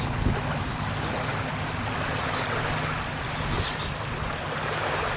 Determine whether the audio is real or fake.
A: real